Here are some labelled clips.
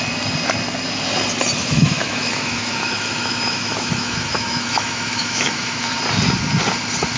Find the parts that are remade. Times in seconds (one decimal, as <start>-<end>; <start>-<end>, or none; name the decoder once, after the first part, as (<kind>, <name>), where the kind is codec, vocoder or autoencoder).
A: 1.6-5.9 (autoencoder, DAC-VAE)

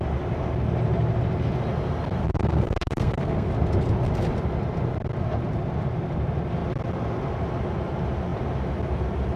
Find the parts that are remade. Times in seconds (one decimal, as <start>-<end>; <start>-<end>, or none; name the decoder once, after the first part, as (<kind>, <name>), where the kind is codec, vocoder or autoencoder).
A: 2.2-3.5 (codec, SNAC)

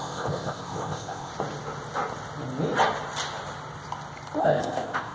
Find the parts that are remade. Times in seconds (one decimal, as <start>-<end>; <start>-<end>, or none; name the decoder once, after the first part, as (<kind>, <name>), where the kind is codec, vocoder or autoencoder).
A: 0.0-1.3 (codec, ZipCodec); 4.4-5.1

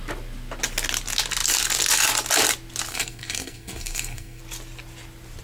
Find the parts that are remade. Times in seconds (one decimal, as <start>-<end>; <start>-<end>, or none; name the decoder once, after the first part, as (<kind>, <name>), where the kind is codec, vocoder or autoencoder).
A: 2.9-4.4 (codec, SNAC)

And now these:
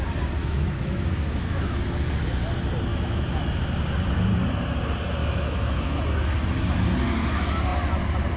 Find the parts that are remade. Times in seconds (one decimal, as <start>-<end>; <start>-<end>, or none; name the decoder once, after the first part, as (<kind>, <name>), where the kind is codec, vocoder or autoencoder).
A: 0.4-1.8 (autoencoder, DAC-VAE); 2.9-3.7; 5.2-6.0

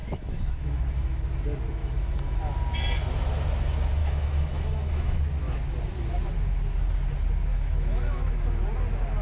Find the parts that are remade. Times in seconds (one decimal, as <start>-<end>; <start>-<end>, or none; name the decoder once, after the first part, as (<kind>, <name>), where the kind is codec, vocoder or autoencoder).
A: 0.0-1.2 (autoencoder, DAC-VAE); 1.8-2.4; 4.0-5.2; 7.5-8.6